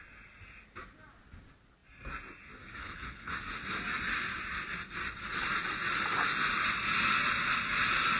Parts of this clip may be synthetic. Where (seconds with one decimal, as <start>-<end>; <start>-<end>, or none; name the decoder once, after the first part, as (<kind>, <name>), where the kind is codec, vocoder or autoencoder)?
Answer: 2.8-3.3 (codec, HILCodec)